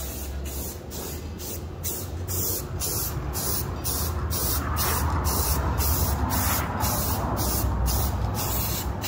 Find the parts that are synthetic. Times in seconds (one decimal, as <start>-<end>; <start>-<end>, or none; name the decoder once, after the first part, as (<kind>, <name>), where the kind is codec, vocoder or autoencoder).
none